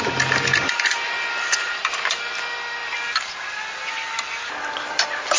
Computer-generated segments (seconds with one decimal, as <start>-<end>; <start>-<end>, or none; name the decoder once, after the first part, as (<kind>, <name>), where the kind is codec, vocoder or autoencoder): none

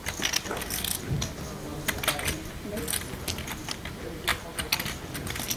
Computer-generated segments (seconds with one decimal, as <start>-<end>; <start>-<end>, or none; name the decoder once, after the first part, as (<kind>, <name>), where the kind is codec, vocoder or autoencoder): none

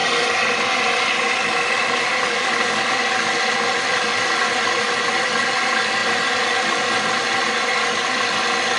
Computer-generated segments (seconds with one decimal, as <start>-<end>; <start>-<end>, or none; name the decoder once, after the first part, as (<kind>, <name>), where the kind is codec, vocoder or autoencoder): none

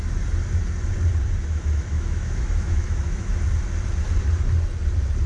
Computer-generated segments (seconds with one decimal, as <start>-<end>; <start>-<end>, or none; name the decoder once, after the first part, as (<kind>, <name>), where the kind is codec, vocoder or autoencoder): 1.4-3.3 (autoencoder, DAC-VAE)

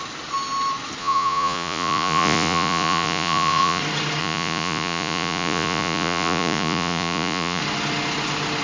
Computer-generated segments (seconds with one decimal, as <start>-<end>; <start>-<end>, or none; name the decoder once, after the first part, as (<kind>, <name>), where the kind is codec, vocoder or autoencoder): 1.0-3.8 (vocoder, Vocos); 4.2-7.6